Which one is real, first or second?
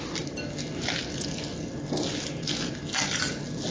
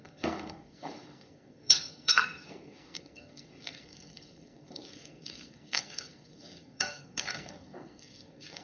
first